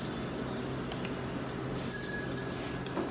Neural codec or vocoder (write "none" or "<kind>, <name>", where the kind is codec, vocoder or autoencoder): none